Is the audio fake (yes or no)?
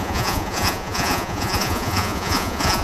yes